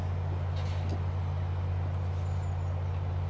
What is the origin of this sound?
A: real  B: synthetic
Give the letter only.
A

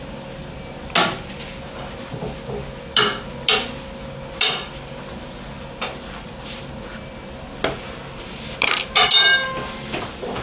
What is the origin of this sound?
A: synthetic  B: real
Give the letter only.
B